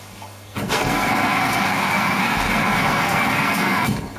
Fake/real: fake